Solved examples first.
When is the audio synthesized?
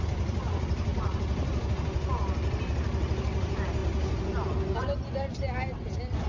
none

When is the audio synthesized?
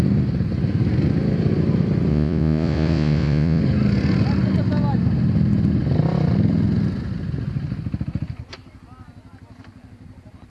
2.1-3.6 (vocoder, Vocos)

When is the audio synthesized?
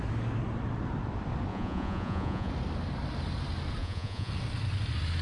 1.5-2.5 (vocoder, Vocos); 3.8-4.3